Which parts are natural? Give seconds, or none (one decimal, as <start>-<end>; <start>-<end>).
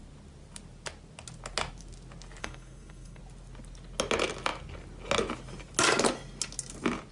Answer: 0.0-2.4; 3.2-7.1